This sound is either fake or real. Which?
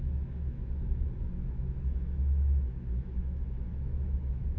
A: fake